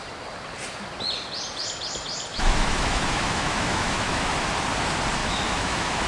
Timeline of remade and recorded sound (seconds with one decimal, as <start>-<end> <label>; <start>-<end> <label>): 0.0-2.3 recorded; 2.3-4.3 remade; 4.3-5.2 recorded; 5.2-6.1 remade